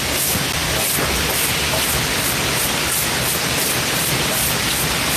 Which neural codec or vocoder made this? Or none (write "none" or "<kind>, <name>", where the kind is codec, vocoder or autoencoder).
none